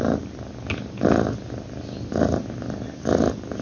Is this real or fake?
real